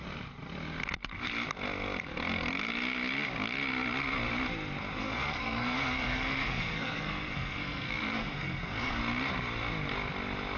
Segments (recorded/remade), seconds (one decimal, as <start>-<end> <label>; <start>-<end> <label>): 0.0-5.0 recorded; 5.0-9.0 remade; 9.0-10.6 recorded